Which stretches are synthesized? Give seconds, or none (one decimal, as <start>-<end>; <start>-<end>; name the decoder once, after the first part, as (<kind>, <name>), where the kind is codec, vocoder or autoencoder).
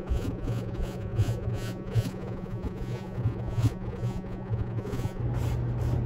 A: 0.0-5.2 (vocoder, Vocos)